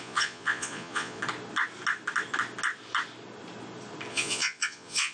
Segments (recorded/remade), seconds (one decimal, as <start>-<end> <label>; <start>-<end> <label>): 0.0-1.2 remade; 1.2-4.1 recorded; 4.1-5.1 remade